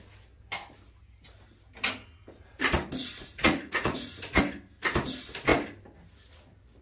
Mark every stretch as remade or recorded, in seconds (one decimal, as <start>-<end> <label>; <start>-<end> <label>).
0.0-3.0 recorded; 3.0-4.4 remade; 4.4-6.8 recorded